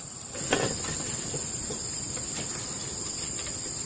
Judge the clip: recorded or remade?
recorded